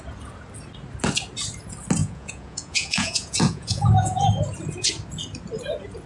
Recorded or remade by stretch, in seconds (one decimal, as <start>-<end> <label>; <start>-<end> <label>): 0.0-2.0 recorded; 2.0-4.3 remade; 4.3-6.1 recorded